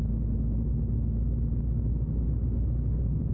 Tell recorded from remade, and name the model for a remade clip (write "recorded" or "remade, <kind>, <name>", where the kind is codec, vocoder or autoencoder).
recorded